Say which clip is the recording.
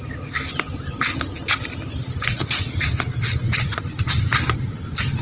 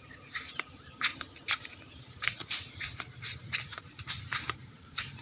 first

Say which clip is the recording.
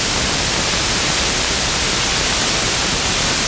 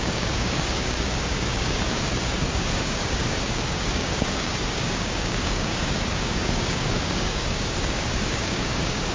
first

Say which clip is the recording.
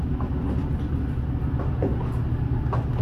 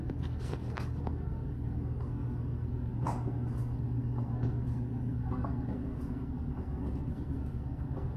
first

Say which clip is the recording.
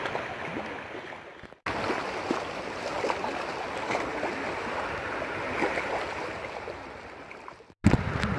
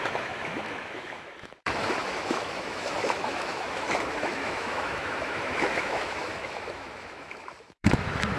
first